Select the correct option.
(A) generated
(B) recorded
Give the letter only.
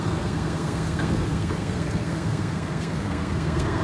A